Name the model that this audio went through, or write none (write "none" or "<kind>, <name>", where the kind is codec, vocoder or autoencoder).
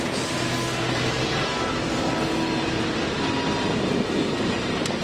none